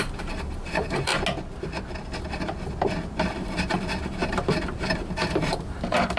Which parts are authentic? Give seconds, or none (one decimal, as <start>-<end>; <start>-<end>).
1.1-3.2